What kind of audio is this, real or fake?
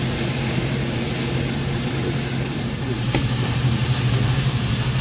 fake